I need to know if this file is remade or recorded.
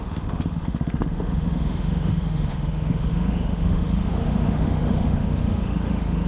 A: remade